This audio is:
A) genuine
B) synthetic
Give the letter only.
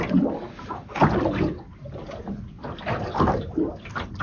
A